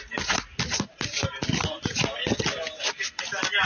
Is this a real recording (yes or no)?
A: yes